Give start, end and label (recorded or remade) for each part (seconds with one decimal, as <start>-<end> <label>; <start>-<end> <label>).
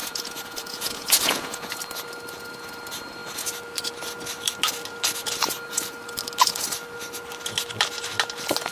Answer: 0.0-1.7 remade; 1.7-8.7 recorded